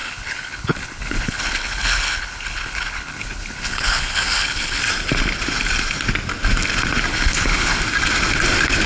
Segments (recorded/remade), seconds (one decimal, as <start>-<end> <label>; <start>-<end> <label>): 0.0-4.8 remade; 4.8-7.1 recorded; 7.1-7.8 remade; 7.8-8.9 recorded